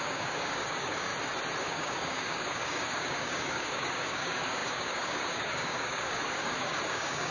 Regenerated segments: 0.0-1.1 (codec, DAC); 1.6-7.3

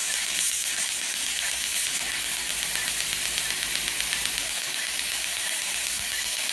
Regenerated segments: 0.0-2.5 (codec, DAC); 4.4-6.5